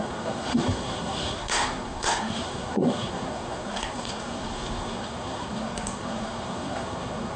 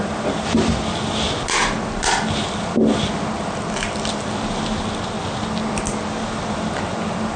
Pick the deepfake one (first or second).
first